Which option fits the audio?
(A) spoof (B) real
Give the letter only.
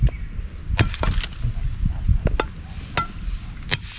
B